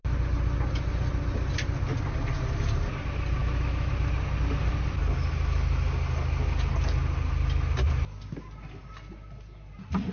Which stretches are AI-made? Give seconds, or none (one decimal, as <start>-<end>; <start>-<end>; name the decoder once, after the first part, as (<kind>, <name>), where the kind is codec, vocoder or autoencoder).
3.4-3.9 (autoencoder, DAC-VAE)